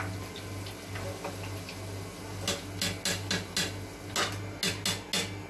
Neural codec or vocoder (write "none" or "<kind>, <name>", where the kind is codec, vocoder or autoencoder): none